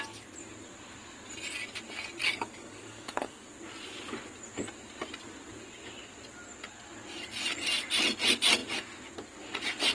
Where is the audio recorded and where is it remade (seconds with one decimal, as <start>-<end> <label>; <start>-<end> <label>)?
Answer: 0.0-2.2 recorded; 2.2-3.5 remade; 3.5-9.9 recorded